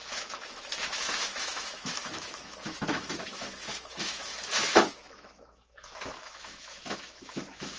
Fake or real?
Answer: fake